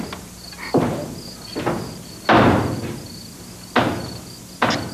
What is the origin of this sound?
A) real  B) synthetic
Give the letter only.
A